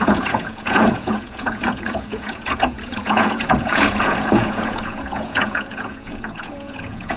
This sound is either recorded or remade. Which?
remade